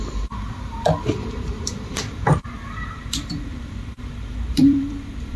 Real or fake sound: fake